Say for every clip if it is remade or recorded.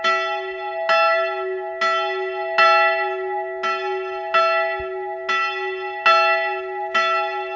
recorded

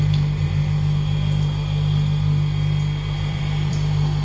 remade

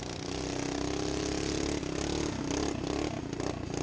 recorded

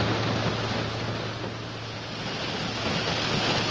recorded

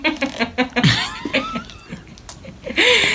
recorded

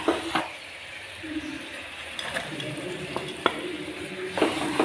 remade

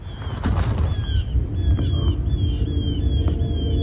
recorded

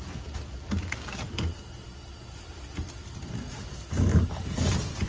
recorded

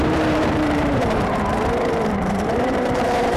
remade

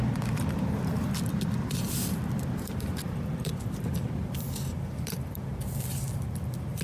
remade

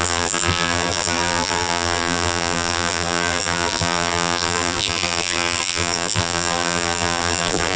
remade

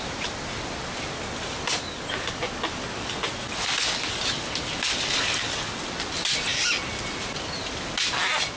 recorded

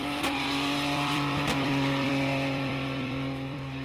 remade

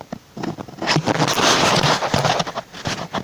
recorded